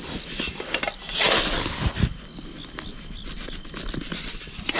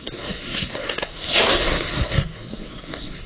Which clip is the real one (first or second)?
first